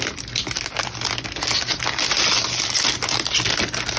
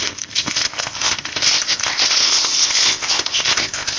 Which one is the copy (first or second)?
second